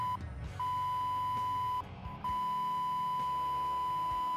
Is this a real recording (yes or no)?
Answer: yes